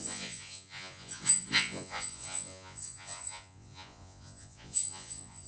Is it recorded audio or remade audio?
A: remade